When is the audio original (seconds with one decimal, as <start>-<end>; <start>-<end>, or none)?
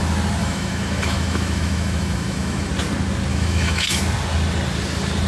0.0-0.4; 2.7-3.3; 4.0-5.3